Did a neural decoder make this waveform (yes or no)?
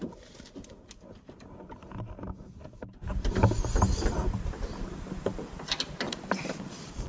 no